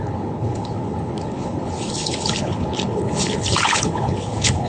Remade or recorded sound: remade